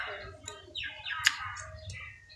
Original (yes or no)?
yes